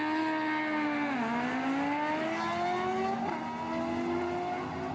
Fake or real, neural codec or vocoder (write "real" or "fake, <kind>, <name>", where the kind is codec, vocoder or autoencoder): real